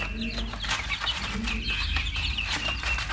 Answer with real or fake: real